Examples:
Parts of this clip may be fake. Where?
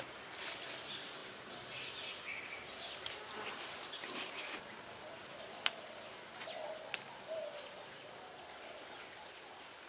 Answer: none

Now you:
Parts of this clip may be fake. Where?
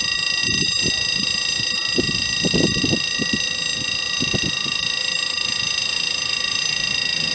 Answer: none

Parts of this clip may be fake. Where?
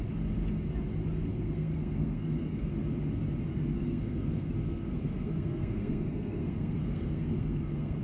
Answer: 1.3-2.7; 3.5-4.5; 4.9-8.0